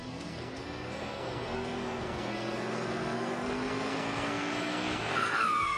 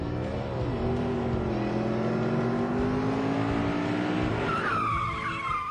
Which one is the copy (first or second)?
first